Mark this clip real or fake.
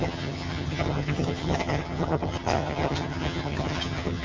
fake